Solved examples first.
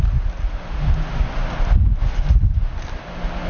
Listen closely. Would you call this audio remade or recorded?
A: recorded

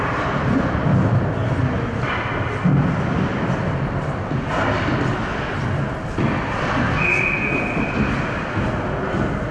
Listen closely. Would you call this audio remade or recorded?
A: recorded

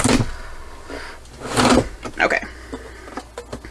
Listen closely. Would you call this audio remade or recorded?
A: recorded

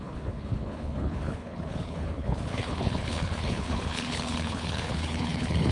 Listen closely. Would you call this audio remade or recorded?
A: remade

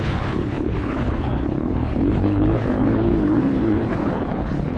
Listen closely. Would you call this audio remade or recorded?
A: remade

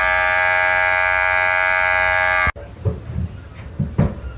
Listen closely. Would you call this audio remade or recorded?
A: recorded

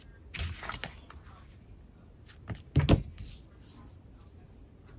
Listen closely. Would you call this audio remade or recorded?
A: recorded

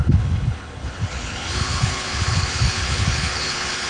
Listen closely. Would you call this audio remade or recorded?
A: remade